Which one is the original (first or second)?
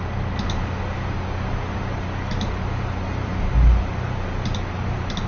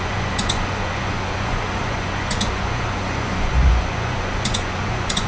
first